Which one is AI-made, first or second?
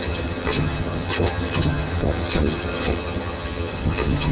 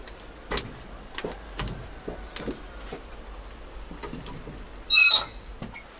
first